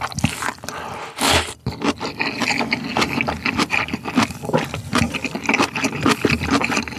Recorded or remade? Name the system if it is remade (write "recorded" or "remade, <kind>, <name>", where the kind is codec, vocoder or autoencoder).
recorded